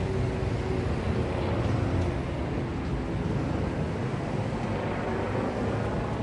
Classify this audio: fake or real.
real